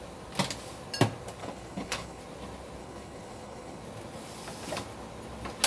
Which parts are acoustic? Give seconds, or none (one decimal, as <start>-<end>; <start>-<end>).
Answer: 0.0-1.4; 2.2-2.8; 3.8-5.7